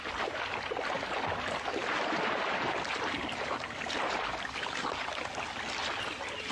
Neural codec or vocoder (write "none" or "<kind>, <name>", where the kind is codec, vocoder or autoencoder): none